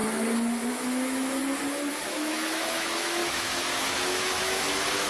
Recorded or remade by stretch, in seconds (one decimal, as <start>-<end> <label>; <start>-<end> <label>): 0.0-0.7 recorded; 0.7-1.4 remade; 1.4-1.9 recorded; 1.9-5.1 remade